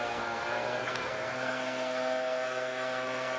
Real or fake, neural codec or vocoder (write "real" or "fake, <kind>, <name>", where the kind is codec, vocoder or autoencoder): fake, codec, SNAC